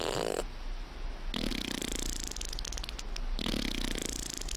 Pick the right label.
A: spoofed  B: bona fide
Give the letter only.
B